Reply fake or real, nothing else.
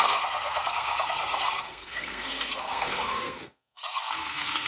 fake